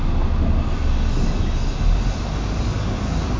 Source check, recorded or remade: recorded